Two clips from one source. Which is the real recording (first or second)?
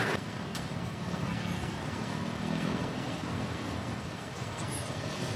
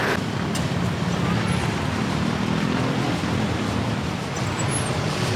second